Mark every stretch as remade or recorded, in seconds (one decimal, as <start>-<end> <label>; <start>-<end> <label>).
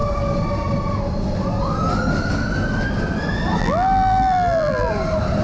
0.0-3.6 recorded; 3.6-4.9 remade; 4.9-5.4 recorded